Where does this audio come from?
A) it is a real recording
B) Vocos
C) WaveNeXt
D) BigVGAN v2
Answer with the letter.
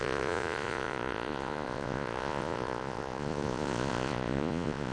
B